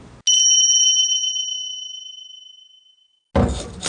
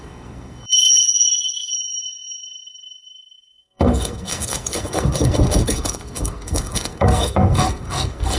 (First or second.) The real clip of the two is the first